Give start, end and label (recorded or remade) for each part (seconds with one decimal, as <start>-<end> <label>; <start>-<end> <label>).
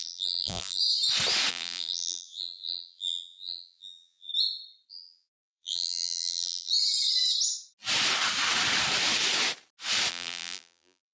0.0-0.8 remade; 0.8-1.5 recorded; 1.5-4.3 remade; 4.3-4.9 recorded; 4.9-6.7 remade; 6.7-10.1 recorded; 10.1-11.1 remade